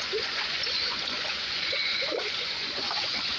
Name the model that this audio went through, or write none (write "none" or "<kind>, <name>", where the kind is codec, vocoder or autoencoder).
vocoder, Vocos